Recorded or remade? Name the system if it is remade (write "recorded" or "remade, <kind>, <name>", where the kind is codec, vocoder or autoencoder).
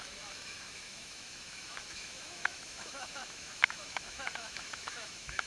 remade, autoencoder, DAC-VAE